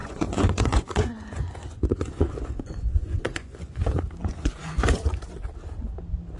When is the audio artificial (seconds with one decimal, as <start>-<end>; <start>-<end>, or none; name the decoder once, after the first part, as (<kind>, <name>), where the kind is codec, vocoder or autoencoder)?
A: 0.0-3.8 (vocoder, Vocos); 4.2-4.8